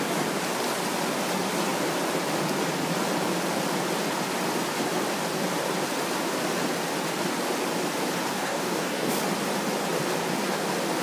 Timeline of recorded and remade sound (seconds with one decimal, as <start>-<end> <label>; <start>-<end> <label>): 0.0-8.3 recorded; 8.3-9.1 remade; 9.1-11.0 recorded